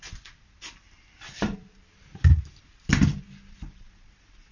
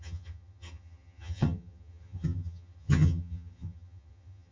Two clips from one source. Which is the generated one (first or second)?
second